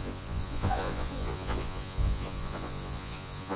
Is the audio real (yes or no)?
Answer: no